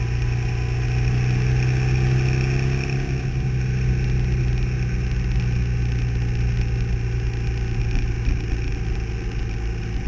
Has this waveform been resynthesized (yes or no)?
no